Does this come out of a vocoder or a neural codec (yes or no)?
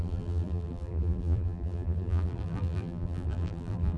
yes